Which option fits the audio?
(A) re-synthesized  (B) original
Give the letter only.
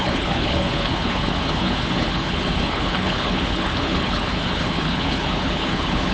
A